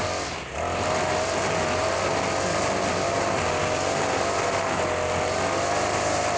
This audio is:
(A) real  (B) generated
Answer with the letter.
A